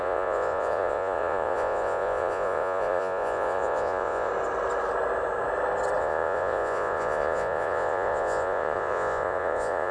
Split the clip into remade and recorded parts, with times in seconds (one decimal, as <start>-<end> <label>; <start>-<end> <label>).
0.0-4.3 remade; 4.3-6.0 recorded; 6.0-9.9 remade